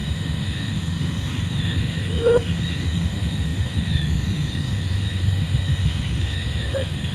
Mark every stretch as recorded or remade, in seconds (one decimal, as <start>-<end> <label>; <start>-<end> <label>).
0.0-7.1 remade

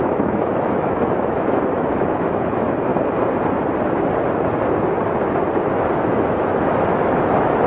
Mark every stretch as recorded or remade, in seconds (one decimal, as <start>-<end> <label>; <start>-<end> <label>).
0.0-2.9 remade; 2.9-6.0 recorded; 6.0-7.7 remade

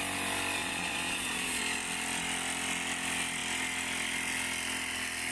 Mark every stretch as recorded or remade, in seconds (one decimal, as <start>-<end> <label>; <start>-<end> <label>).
0.0-0.6 recorded; 0.6-1.6 remade; 1.6-5.3 recorded

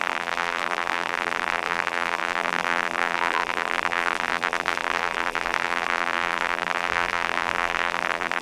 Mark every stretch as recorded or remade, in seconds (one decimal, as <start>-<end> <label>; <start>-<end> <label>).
0.0-8.4 remade

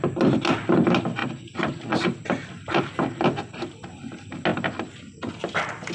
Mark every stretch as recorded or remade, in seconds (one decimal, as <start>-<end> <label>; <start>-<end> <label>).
0.0-1.2 recorded; 1.2-2.8 remade; 2.8-4.5 recorded; 4.5-5.9 remade

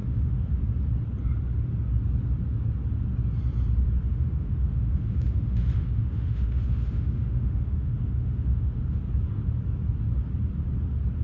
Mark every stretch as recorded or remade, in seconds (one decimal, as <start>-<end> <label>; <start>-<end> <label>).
0.0-0.6 remade; 0.6-4.0 recorded; 4.0-9.0 remade; 9.0-11.2 recorded

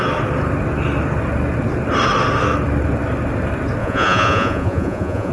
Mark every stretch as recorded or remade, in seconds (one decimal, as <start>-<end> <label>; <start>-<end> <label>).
0.0-3.8 recorded; 3.8-5.3 remade